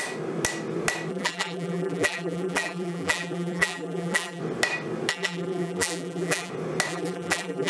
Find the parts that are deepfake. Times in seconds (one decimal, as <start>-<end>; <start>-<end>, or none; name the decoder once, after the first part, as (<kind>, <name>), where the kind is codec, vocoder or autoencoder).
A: 1.1-4.4 (vocoder, BigVGAN v2); 5.1-6.5; 6.9-7.7